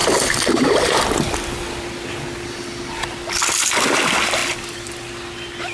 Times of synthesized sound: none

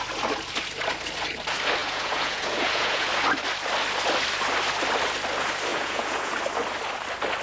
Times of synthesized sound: 1.8-3.1 (vocoder, Vocos); 5.7-6.3

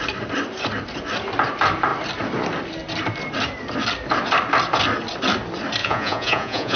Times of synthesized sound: 5.8-6.8 (vocoder, Vocos)

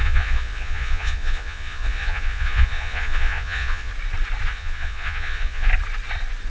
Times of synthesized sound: 0.0-3.9 (vocoder, Vocos); 4.5-5.7

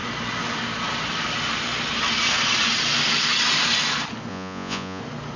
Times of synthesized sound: 4.3-5.0 (vocoder, Vocos)

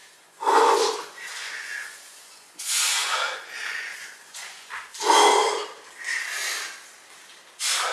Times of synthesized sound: 0.0-4.7 (vocoder, Vocos)

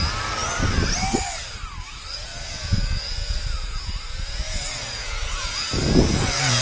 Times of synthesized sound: 2.3-6.6 (vocoder, Vocos)